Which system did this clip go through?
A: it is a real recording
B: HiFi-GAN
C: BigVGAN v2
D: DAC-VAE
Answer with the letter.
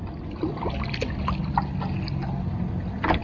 A